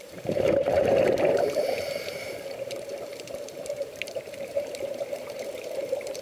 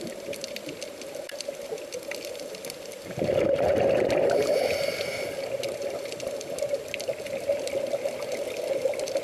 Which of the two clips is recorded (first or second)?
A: second